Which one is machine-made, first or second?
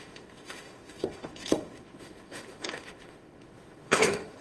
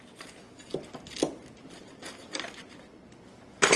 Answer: first